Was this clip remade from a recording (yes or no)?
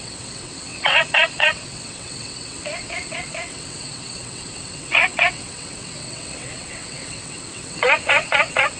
yes